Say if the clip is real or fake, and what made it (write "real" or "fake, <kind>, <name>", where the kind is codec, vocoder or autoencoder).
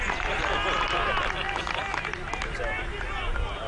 real